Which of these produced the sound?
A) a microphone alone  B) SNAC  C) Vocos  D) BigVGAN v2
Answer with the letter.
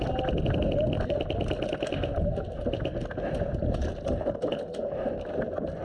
A